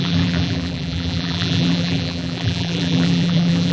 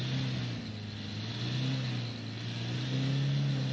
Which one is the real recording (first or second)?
second